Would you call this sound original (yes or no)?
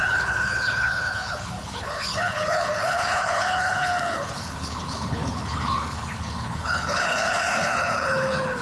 no